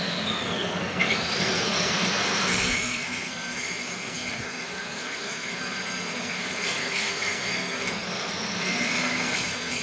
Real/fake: fake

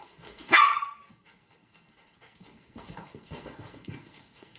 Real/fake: fake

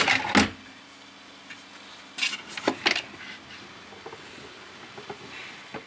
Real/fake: real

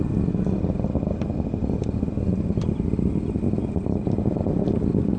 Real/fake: real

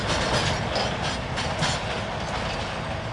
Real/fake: real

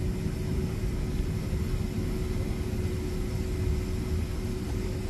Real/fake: real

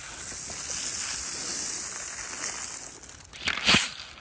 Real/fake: real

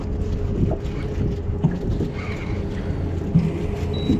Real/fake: real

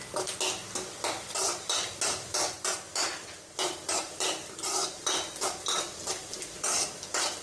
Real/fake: real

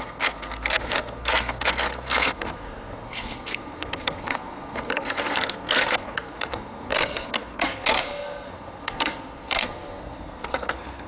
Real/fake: fake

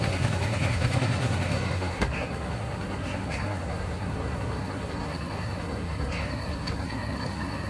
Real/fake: fake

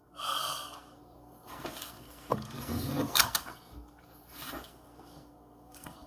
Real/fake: fake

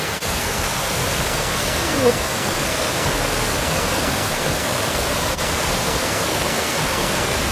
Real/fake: fake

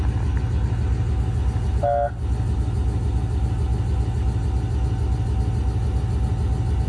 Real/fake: real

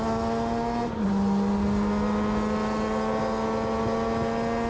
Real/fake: real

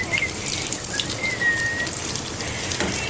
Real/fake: real